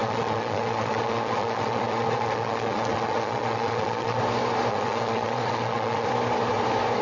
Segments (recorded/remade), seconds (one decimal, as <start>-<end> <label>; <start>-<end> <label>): 0.0-4.2 remade; 4.2-4.7 recorded; 4.7-6.1 remade; 6.1-7.0 recorded